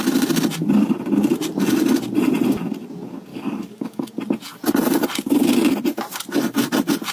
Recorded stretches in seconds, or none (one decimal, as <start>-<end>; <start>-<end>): 0.0-3.3; 4.1-7.1